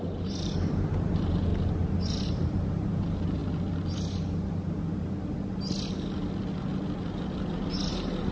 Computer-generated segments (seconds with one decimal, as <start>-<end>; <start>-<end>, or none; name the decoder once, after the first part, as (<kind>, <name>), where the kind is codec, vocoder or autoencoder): 0.0-1.5 (vocoder, BigVGAN v2); 2.0-3.4; 7.9-8.3